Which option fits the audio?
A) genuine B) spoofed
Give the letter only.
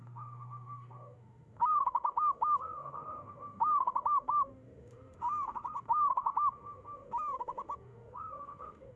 B